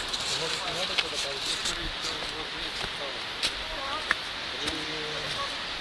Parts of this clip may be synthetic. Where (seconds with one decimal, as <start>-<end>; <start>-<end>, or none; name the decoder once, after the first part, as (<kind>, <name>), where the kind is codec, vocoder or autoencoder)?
none